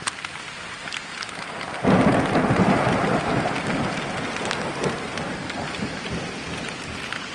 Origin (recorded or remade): recorded